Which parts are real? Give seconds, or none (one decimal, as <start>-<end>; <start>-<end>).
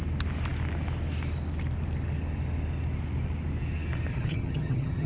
0.0-4.1